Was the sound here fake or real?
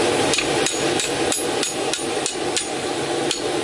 real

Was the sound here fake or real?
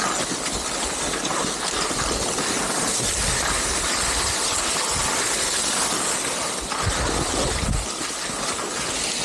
real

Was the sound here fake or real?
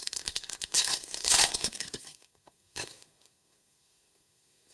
fake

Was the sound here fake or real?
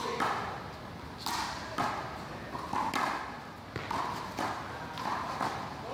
real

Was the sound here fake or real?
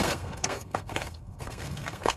fake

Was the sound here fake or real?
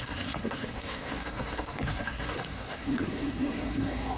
fake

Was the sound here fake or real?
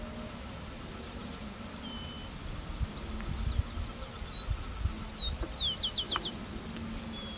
real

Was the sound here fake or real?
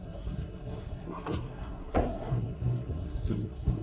fake